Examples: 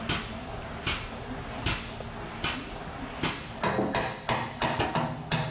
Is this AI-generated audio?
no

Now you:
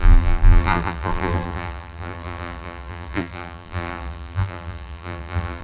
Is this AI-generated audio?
yes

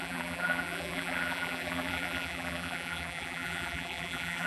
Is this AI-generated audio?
yes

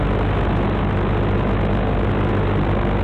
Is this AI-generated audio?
no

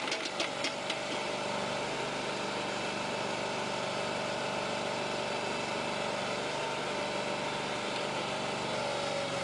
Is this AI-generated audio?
no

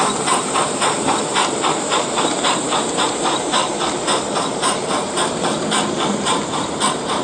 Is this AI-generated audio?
yes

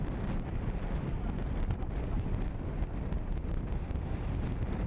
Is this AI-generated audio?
no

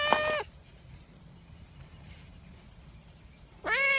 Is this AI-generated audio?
no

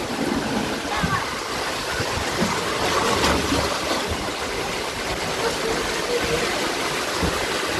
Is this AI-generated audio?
no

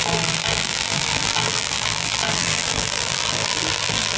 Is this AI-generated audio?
yes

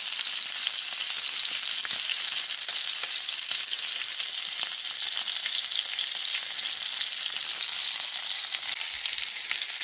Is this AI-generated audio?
no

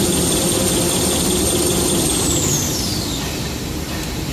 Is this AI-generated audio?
no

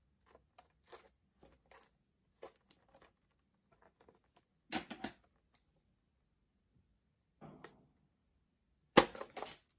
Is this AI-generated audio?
no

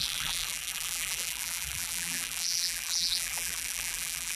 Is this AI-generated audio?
yes